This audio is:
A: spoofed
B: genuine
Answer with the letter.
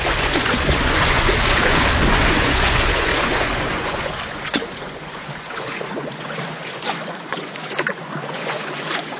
A